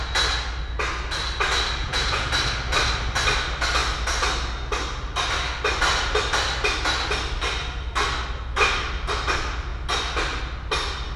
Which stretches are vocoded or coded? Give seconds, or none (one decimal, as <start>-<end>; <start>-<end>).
1.8-2.3